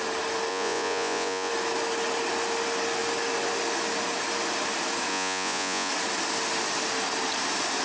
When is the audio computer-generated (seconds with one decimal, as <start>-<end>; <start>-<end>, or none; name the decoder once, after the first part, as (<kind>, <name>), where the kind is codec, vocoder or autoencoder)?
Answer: 0.5-1.5 (vocoder, Vocos); 5.1-5.9